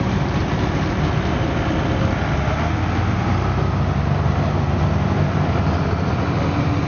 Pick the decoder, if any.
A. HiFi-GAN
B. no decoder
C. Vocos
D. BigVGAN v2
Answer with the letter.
B